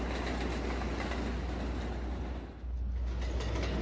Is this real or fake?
real